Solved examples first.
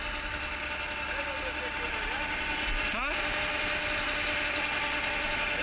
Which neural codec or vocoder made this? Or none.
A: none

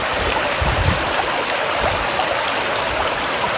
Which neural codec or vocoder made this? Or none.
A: none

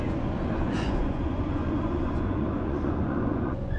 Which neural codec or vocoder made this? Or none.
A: vocoder, Vocos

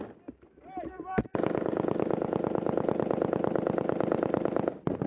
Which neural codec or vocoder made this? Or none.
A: none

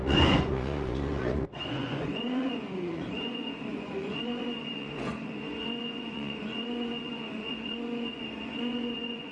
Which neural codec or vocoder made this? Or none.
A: vocoder, Vocos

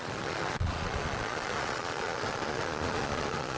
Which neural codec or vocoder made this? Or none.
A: vocoder, Vocos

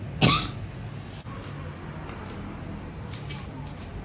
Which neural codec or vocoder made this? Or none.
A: none